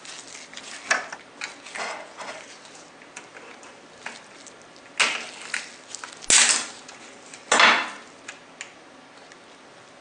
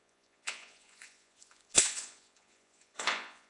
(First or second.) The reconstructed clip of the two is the second